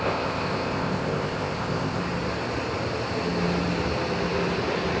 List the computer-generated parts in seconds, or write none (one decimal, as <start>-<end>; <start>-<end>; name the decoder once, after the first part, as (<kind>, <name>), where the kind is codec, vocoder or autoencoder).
0.0-2.0 (codec, ZipCodec)